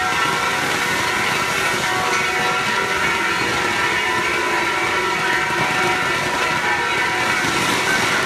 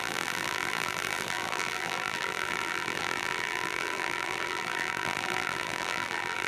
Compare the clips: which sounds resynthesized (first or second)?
second